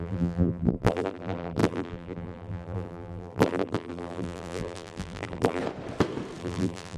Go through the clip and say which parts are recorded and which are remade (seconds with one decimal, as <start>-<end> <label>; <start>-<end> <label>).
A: 0.0-5.6 remade; 5.6-6.4 recorded; 6.4-7.0 remade